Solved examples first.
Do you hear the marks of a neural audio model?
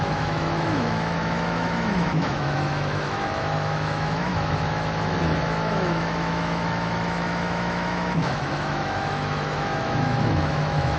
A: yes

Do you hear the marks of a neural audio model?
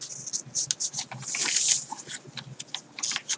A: no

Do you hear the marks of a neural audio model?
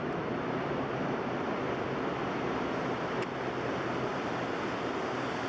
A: no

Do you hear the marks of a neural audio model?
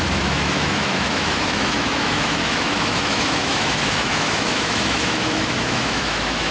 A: yes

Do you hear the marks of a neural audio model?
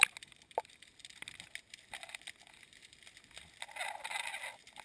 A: no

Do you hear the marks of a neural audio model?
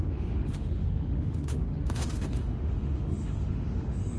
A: yes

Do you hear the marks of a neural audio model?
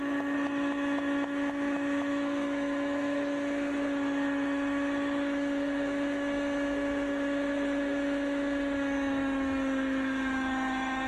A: yes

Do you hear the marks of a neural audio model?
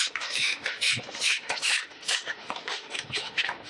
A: yes